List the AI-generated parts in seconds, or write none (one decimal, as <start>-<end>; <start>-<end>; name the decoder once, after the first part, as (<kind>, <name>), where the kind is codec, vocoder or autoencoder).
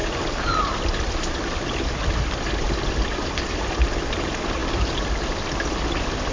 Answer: none